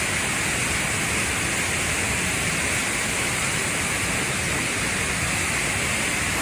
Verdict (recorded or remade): recorded